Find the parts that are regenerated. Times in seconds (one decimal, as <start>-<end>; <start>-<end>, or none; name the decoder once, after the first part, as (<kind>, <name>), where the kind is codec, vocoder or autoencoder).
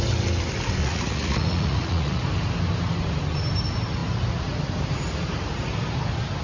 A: 0.8-2.2 (vocoder, Vocos)